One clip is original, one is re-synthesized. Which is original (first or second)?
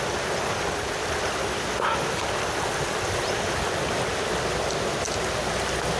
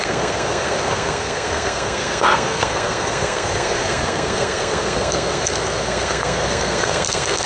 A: first